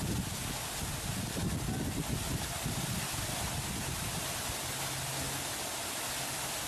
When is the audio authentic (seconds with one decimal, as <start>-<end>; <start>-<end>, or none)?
0.0-6.7